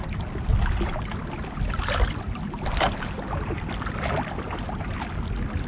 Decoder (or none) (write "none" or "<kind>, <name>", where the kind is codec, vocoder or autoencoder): none